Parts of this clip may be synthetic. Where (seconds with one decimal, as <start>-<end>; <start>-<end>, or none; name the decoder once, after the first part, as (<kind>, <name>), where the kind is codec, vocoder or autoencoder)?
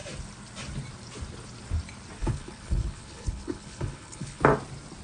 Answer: 2.2-4.4 (codec, HILCodec)